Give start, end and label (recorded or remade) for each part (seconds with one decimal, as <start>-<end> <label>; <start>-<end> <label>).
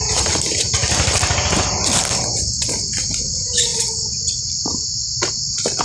0.0-0.8 remade; 0.8-2.3 recorded; 2.3-5.8 remade